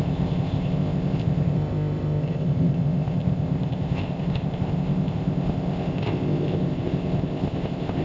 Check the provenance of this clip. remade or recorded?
remade